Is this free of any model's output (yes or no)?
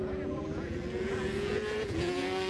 no